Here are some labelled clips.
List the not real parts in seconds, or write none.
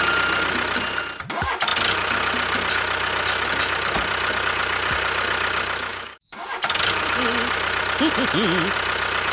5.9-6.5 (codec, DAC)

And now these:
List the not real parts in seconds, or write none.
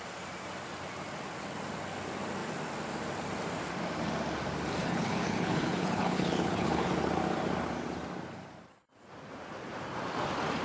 4.8-6.9 (codec, HILCodec)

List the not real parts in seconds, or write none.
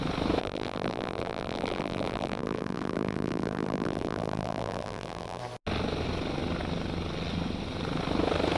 0.4-5.4 (vocoder, BigVGAN v2)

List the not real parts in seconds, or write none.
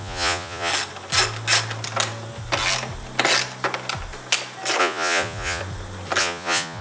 0.0-0.7 (vocoder, Vocos); 4.8-5.6; 6.2-6.8